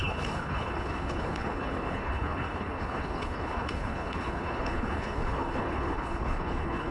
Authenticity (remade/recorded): remade